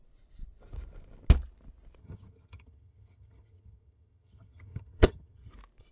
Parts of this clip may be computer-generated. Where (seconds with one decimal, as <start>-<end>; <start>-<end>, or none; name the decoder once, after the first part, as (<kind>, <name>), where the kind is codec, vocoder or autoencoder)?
2.0-5.5 (vocoder, HiFi-GAN)

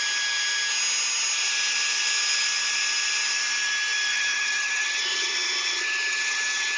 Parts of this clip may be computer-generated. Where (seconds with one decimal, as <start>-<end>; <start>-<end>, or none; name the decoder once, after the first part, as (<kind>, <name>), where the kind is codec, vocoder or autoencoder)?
4.1-6.8 (vocoder, HiFi-GAN)

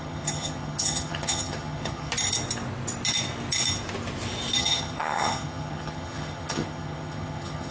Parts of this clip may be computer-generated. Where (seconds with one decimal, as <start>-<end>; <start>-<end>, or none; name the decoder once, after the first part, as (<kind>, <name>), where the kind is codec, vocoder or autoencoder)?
0.0-2.1 (vocoder, HiFi-GAN); 4.6-7.7

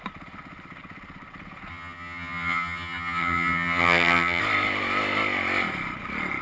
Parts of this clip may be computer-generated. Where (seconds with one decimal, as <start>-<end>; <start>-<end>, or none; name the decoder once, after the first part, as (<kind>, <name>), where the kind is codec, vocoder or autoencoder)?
1.7-4.4 (vocoder, HiFi-GAN)

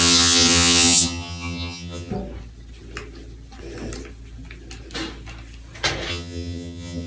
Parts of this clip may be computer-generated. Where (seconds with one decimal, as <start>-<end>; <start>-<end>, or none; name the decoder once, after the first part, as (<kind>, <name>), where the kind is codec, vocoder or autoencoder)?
0.0-2.1 (vocoder, HiFi-GAN); 6.1-7.1

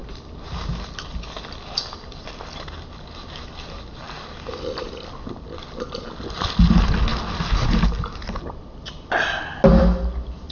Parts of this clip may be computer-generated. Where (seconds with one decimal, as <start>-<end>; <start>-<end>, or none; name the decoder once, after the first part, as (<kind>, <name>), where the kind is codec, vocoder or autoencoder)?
none